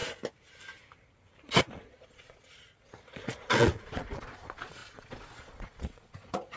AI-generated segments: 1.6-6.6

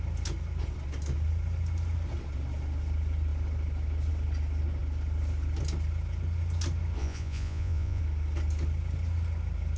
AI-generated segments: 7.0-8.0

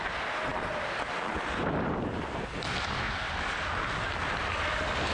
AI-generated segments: none

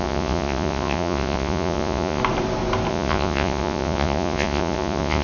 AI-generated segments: 0.0-2.2; 2.9-5.2